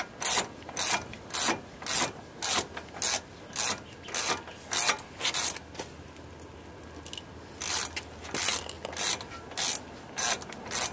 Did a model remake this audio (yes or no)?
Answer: no